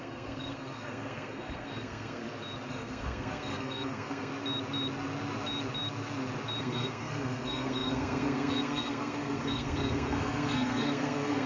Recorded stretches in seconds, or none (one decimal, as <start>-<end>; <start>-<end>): 2.2-2.7; 4.3-6.6